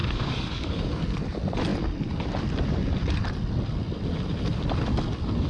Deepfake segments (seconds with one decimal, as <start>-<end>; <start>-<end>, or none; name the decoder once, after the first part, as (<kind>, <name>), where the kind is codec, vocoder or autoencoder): 0.0-1.0 (codec, DAC)